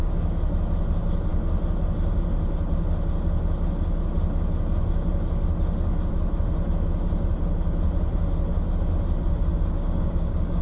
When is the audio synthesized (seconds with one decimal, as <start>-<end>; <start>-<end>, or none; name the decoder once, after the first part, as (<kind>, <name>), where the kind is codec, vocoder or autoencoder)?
0.0-0.5 (codec, DAC); 9.5-10.6